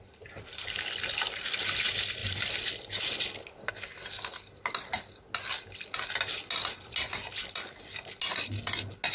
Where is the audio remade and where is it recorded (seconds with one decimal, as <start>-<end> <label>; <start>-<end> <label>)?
0.0-9.1 recorded